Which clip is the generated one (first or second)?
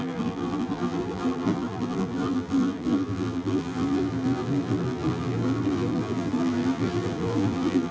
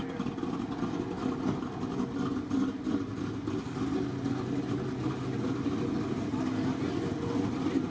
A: first